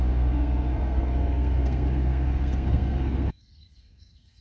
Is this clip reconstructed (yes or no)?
yes